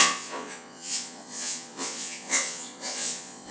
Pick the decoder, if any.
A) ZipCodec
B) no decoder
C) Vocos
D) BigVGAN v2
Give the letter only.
C